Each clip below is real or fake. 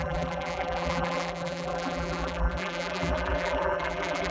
fake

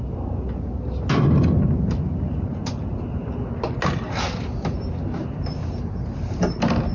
real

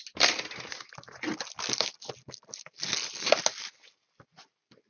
real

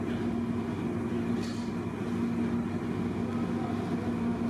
real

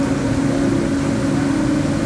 real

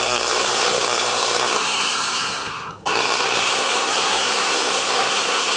fake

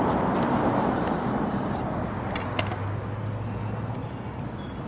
real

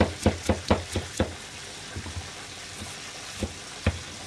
real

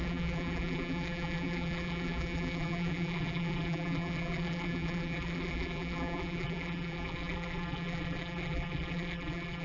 fake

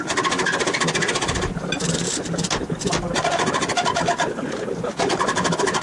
real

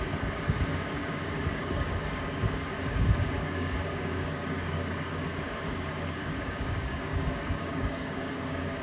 fake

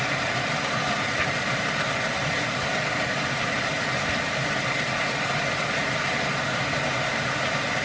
real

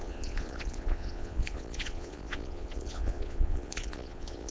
fake